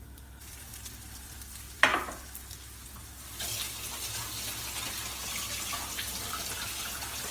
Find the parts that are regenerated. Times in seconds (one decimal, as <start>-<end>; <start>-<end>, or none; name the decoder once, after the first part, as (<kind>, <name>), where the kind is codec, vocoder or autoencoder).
0.0-1.9 (vocoder, BigVGAN v2); 6.3-7.3